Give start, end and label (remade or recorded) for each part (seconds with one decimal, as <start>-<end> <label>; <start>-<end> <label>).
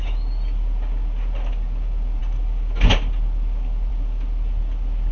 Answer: 0.0-5.1 recorded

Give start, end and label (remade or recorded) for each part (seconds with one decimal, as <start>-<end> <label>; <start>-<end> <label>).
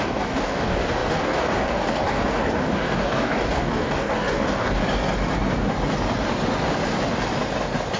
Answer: 0.0-4.8 remade; 4.8-8.0 recorded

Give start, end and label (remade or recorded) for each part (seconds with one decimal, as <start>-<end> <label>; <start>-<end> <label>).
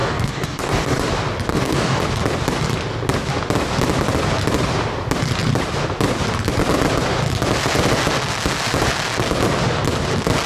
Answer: 0.0-1.1 remade; 1.1-1.5 recorded; 1.5-2.0 remade; 2.0-10.5 recorded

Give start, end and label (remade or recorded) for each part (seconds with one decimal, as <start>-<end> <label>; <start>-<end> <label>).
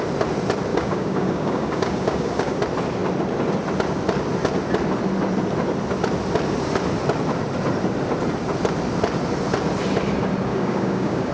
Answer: 0.0-0.7 recorded; 0.7-2.6 remade; 2.6-10.5 recorded; 10.5-11.3 remade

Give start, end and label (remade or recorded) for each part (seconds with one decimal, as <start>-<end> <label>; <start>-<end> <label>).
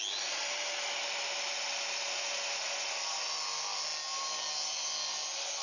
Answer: 0.0-5.6 recorded